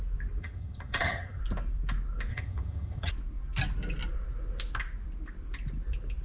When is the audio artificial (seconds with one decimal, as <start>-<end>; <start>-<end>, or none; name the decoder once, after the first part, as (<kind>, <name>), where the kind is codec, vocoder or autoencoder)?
0.4-1.4 (vocoder, HiFi-GAN); 2.3-3.1